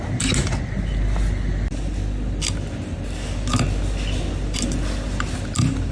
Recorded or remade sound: recorded